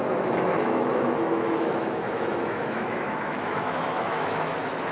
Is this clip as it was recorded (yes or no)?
no